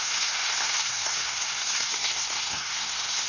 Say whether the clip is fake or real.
fake